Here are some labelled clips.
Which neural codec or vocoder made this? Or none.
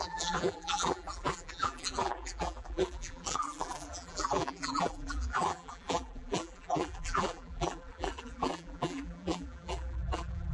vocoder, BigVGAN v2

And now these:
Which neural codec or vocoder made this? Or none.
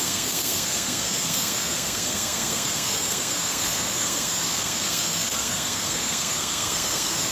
codec, SNAC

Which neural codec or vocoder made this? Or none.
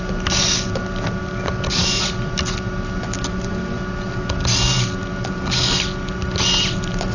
none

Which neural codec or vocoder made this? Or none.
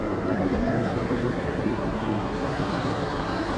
codec, SNAC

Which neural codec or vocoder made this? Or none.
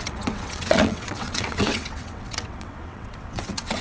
vocoder, WaveNeXt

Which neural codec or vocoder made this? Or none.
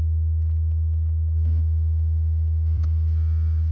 none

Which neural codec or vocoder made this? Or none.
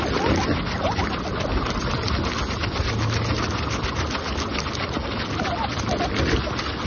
none